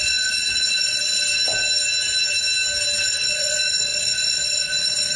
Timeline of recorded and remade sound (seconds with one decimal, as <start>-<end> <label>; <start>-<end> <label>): 0.0-1.2 remade; 1.2-3.1 recorded; 3.1-5.2 remade